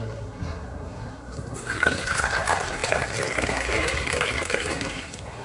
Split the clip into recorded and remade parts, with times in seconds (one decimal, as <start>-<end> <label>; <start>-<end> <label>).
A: 0.0-5.4 remade